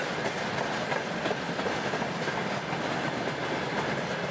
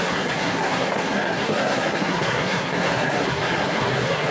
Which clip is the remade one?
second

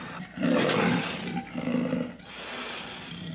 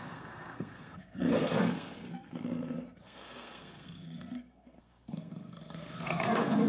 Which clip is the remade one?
second